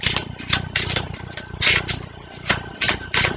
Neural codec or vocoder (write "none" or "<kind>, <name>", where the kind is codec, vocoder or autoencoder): none